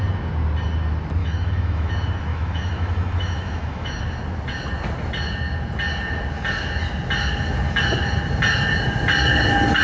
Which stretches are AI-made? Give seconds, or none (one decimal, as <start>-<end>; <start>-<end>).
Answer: 1.2-1.9; 2.3-3.9